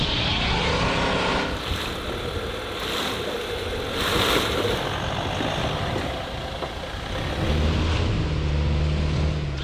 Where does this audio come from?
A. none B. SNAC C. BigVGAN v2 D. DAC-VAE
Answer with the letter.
A